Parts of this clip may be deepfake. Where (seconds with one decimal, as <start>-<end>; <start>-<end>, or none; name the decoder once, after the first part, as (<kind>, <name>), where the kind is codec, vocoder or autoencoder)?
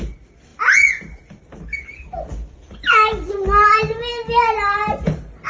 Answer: none